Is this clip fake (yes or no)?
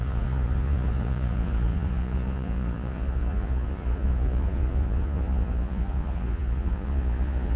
yes